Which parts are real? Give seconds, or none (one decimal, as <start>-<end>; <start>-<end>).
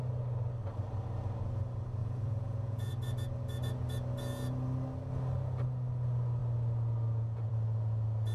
0.0-2.0; 2.9-8.3